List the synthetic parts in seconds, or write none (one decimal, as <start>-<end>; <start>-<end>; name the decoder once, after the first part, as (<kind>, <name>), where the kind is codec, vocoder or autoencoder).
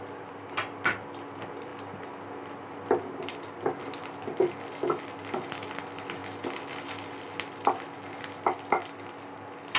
none